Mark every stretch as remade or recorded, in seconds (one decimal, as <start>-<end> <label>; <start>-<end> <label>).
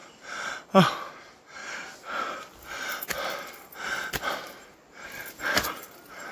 0.0-1.2 remade; 1.2-1.6 recorded; 1.6-5.2 remade; 5.2-6.3 recorded